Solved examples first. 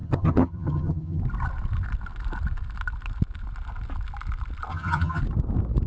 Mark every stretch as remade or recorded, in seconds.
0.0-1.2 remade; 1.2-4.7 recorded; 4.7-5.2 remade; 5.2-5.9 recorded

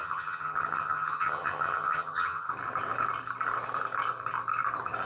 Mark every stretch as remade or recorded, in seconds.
0.0-2.5 remade; 2.5-5.0 recorded

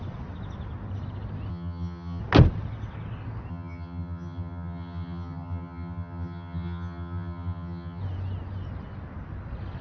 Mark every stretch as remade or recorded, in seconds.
0.0-1.5 recorded; 1.5-2.2 remade; 2.2-3.5 recorded; 3.5-8.0 remade; 8.0-9.8 recorded

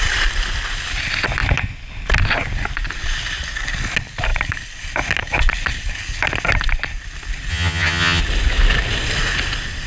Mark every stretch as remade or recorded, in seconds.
0.0-7.5 recorded; 7.5-8.2 remade; 8.2-9.9 recorded

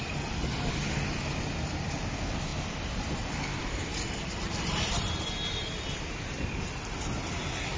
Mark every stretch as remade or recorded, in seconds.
0.0-7.8 recorded

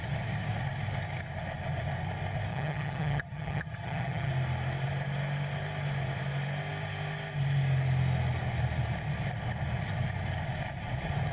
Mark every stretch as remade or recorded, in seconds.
0.0-2.5 recorded; 2.5-4.3 remade; 4.3-11.3 recorded